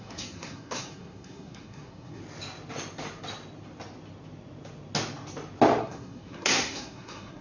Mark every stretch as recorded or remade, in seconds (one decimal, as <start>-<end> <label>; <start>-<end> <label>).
0.0-2.2 remade; 2.2-5.8 recorded; 5.8-7.4 remade